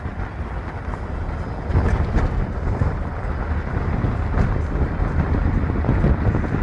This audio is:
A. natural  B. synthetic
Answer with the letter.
A